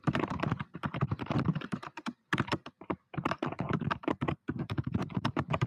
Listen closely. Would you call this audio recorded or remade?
remade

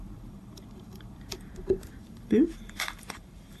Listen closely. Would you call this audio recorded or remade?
remade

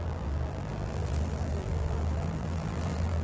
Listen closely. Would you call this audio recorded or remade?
remade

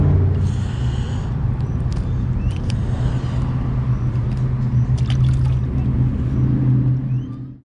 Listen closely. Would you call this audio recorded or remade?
recorded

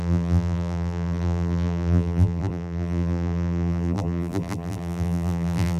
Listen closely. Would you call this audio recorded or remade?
remade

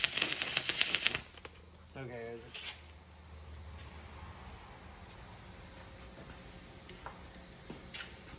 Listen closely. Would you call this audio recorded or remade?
recorded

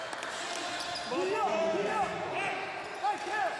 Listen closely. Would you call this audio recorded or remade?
recorded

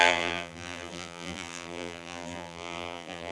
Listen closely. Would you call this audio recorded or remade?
remade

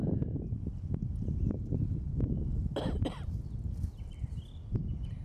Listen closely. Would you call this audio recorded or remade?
recorded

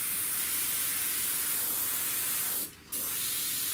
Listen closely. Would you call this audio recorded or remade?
recorded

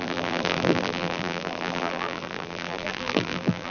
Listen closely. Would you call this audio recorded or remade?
remade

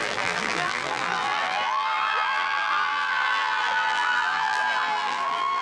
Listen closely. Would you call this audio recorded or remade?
remade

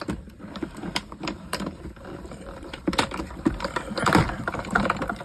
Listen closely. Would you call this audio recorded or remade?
remade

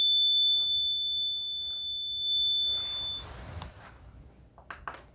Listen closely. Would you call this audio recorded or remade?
recorded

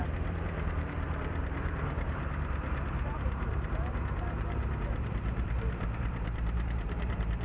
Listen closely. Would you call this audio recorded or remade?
remade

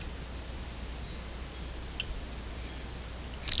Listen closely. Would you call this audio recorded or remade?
recorded